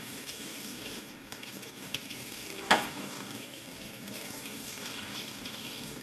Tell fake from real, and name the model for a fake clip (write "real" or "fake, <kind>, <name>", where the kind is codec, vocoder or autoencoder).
fake, codec, DAC